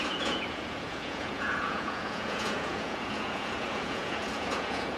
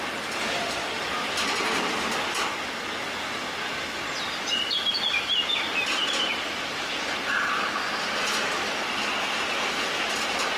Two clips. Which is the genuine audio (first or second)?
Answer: second